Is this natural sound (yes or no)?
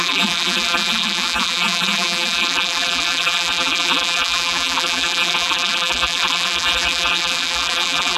no